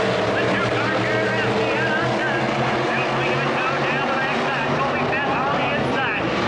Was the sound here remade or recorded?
recorded